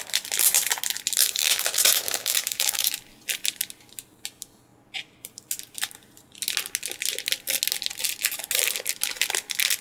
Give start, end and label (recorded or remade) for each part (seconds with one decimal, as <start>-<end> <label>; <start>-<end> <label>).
0.0-1.2 recorded; 1.2-2.9 remade; 2.9-9.8 recorded